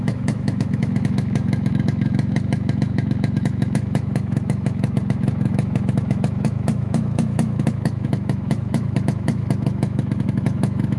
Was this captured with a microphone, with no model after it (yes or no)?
no